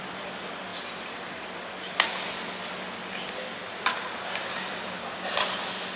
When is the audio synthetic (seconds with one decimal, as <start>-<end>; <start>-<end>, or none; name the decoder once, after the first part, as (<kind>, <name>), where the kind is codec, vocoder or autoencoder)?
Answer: none